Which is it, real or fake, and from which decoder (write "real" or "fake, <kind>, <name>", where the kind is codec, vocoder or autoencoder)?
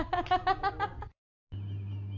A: real